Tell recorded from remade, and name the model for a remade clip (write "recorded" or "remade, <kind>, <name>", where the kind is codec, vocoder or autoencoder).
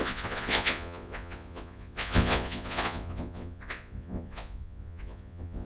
remade, vocoder, Vocos